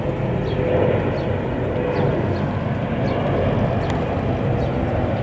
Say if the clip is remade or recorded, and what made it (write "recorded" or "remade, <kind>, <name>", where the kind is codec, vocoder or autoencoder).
recorded